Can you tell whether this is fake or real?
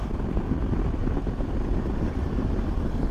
real